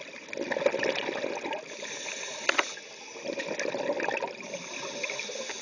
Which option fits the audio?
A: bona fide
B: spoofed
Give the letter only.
A